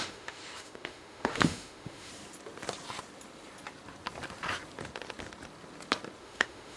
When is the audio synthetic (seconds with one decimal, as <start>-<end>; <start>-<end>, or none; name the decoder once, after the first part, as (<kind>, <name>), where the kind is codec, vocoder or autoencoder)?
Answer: 0.0-2.1 (autoencoder, DAC-VAE); 6.2-6.8